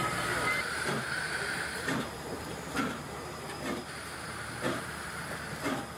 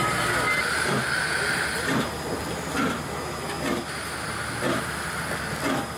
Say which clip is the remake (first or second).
first